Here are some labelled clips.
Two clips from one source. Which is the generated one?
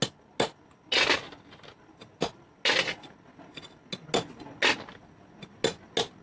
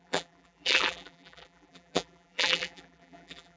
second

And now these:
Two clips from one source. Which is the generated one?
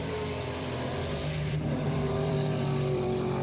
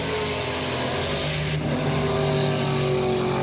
first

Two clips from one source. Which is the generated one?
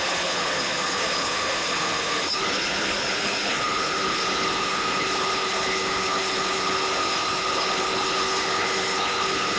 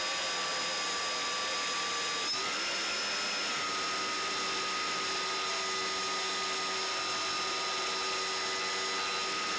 first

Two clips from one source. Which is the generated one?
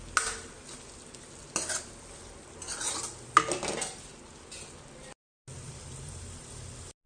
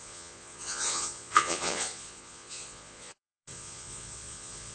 second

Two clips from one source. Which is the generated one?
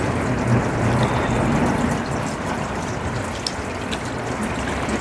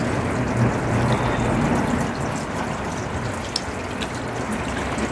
first